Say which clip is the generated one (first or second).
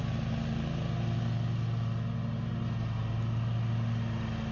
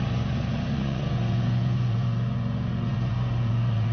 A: second